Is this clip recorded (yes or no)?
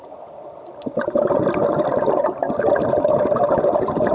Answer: yes